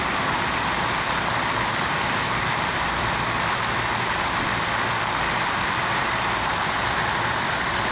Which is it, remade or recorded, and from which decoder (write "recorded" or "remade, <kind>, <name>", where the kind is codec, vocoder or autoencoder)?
recorded